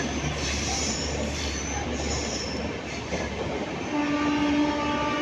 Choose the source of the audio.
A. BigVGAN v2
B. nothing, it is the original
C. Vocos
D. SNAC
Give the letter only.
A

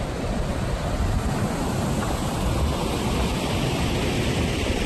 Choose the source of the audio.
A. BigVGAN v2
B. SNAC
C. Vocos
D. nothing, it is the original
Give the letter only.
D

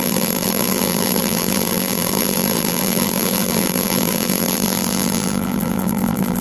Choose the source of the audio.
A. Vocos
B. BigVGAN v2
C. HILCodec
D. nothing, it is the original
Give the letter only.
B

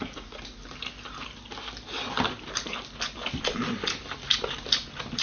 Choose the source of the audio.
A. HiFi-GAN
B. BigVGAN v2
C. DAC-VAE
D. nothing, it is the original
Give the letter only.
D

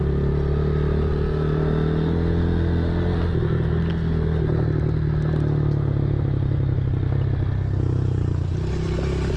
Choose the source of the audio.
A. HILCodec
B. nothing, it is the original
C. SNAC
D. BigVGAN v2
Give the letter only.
B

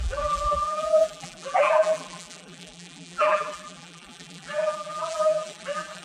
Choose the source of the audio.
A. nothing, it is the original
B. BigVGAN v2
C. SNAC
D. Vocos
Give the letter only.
B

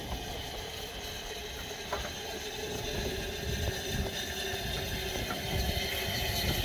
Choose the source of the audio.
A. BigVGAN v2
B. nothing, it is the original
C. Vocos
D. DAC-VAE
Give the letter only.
B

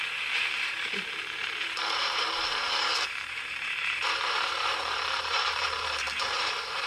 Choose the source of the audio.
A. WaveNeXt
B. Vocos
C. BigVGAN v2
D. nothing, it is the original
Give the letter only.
C